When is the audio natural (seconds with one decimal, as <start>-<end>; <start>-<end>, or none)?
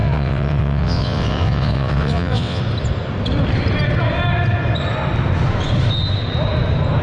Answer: 2.6-7.0